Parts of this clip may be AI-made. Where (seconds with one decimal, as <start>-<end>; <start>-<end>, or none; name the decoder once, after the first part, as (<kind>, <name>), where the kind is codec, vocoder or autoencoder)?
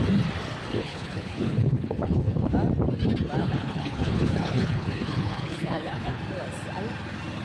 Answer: 0.7-2.5 (codec, HILCodec); 3.4-6.2